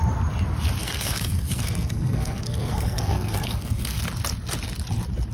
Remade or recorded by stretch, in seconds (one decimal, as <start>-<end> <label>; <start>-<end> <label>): 0.0-0.8 recorded; 0.8-4.0 remade; 4.0-5.3 recorded